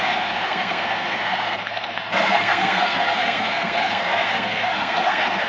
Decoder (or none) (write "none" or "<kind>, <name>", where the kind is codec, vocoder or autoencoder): codec, SNAC